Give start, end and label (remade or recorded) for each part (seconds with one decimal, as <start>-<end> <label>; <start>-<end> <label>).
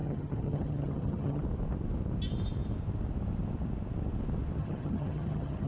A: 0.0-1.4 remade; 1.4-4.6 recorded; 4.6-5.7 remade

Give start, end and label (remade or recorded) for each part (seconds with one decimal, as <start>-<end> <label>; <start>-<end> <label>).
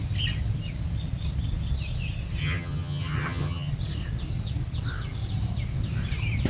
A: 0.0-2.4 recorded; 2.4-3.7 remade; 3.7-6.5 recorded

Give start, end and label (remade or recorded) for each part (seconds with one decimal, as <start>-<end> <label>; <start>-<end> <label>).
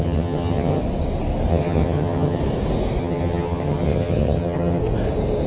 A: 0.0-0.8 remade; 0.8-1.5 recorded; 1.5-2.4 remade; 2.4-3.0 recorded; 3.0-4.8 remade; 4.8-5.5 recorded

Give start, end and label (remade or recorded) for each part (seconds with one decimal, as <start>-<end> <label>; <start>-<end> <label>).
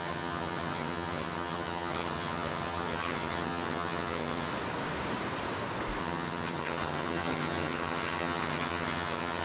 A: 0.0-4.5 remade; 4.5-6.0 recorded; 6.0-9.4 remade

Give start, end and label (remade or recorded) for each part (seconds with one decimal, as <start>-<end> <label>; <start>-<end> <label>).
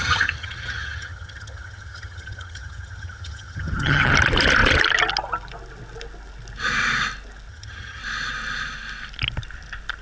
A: 0.0-4.1 remade; 4.1-7.5 recorded; 7.5-8.0 remade; 8.0-10.0 recorded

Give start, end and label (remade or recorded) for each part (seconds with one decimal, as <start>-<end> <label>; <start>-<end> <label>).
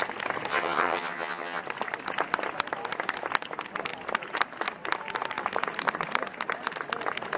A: 0.0-0.5 recorded; 0.5-1.6 remade; 1.6-7.4 recorded